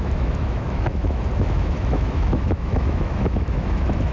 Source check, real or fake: fake